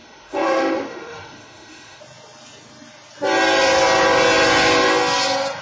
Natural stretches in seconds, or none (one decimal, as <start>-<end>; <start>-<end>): 2.0-5.6